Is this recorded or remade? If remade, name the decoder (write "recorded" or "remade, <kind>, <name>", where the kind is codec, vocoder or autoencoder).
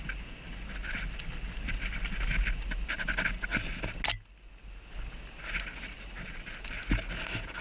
recorded